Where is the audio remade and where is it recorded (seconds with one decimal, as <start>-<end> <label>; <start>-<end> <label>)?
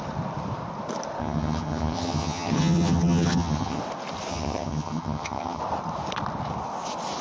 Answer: 0.0-1.2 recorded; 1.2-3.8 remade; 3.8-4.3 recorded; 4.3-5.6 remade; 5.6-7.2 recorded